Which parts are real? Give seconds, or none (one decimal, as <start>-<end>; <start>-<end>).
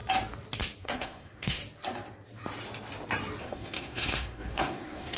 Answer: 0.0-0.8; 1.6-3.4